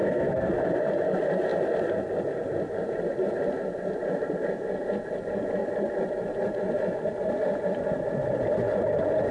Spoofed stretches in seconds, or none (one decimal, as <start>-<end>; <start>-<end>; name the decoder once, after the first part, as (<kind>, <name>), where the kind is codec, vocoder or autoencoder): 0.0-0.5 (codec, SNAC)